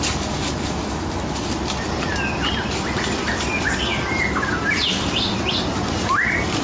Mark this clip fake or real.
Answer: real